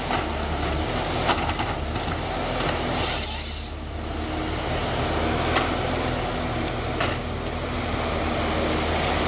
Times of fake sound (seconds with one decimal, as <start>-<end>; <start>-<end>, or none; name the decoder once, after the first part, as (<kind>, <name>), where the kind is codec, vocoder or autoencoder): none